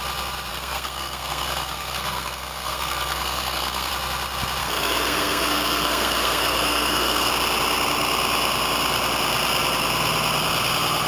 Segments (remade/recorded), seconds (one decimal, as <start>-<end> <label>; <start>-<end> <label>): 0.0-0.5 recorded; 0.5-3.9 remade; 3.9-4.6 recorded; 4.6-7.3 remade; 7.3-11.1 recorded